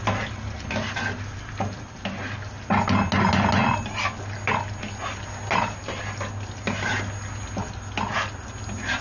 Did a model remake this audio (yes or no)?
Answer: no